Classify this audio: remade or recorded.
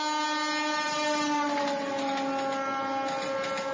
recorded